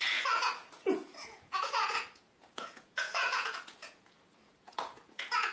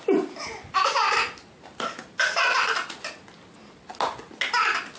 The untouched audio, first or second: second